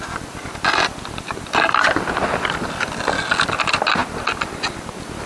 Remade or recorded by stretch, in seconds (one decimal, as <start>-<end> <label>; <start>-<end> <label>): 0.0-5.3 recorded